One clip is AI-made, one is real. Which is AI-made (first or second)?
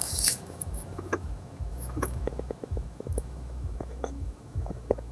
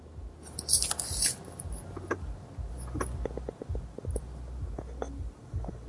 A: first